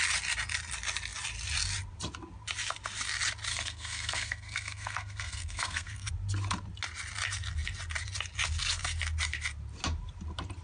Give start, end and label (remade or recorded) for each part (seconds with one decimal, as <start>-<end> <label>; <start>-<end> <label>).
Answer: 0.0-3.5 recorded; 3.5-6.1 remade; 6.1-10.6 recorded